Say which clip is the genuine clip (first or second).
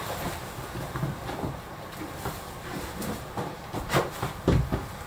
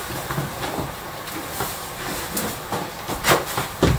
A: second